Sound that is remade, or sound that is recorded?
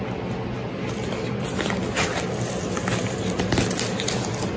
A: recorded